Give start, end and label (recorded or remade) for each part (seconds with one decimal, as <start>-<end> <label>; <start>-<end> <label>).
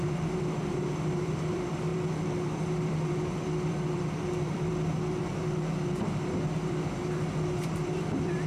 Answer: 0.0-8.5 remade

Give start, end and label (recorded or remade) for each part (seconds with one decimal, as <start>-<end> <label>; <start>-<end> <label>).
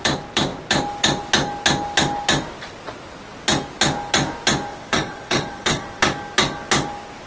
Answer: 0.0-4.7 recorded; 4.7-6.0 remade; 6.0-7.3 recorded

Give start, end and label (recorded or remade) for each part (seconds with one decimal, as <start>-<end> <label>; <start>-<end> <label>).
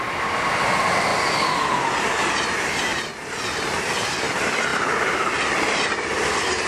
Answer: 0.0-1.1 recorded; 1.1-2.0 remade; 2.0-2.9 recorded; 2.9-3.4 remade; 3.4-4.7 recorded; 4.7-6.7 remade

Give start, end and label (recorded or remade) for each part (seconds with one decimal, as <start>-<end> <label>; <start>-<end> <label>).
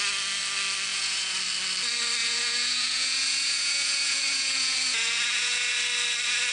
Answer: 0.0-0.9 recorded; 0.9-1.4 remade; 1.4-2.2 recorded; 2.2-5.7 remade; 5.7-6.5 recorded